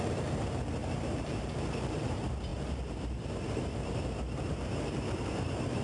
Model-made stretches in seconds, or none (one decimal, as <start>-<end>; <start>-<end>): 0.0-5.8

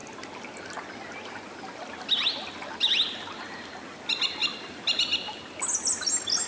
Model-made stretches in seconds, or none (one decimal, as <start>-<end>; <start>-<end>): none